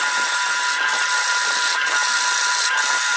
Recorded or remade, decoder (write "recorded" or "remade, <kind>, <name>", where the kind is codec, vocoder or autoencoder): recorded